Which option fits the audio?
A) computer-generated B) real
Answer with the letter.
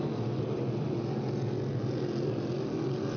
B